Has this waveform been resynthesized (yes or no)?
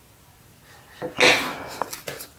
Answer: no